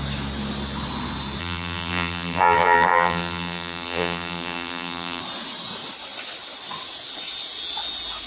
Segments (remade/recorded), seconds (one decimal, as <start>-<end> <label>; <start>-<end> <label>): 0.0-1.4 recorded; 1.4-5.2 remade; 5.2-8.3 recorded